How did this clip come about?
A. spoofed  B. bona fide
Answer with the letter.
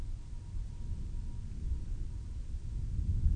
B